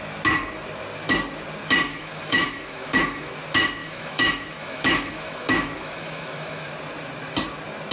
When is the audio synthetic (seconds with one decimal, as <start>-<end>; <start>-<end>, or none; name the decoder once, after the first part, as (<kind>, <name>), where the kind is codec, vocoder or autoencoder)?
1.9-3.3 (autoencoder, DAC-VAE); 3.8-6.7

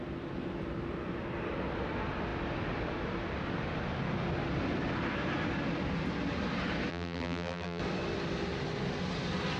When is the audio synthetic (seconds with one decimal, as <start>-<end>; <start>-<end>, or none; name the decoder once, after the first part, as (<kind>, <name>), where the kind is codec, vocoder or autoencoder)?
6.9-7.8 (vocoder, BigVGAN v2)

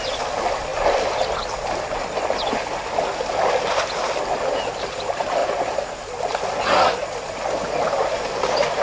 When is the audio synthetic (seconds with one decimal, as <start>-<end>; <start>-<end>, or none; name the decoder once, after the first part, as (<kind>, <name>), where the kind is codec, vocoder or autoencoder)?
5.4-6.2 (vocoder, BigVGAN v2)

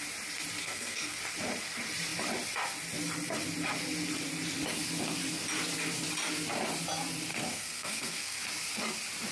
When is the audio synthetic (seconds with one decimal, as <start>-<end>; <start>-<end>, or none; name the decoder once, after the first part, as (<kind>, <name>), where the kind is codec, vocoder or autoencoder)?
0.6-1.2 (codec, SNAC); 7.3-8.4

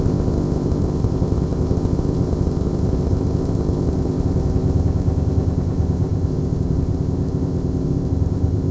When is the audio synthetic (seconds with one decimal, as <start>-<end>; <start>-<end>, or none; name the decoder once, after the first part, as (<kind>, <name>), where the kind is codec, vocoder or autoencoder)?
0.0-8.7 (codec, ZipCodec)

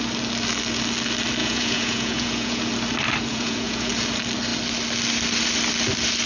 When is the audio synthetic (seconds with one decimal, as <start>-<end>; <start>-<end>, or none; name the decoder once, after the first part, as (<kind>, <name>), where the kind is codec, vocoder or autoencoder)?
1.4-2.6 (vocoder, Vocos); 3.3-3.9

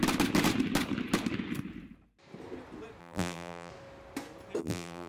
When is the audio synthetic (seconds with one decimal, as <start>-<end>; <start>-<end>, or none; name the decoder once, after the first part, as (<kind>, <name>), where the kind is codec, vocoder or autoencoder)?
3.0-3.7 (vocoder, BigVGAN v2); 4.6-5.1

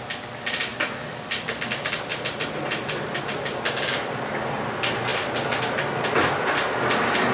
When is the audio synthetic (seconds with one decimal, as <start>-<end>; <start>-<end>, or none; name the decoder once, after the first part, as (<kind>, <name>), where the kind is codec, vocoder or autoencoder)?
0.7-1.6 (vocoder, BigVGAN v2); 2.1-3.2